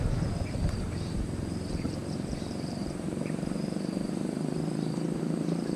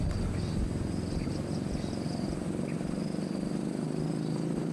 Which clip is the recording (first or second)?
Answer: second